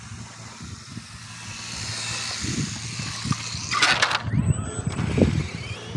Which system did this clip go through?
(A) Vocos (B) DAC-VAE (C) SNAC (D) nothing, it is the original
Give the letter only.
D